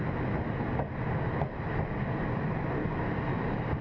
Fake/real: real